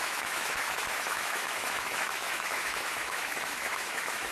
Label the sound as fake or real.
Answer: fake